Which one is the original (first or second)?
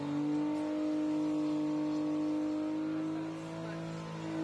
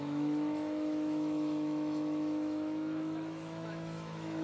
first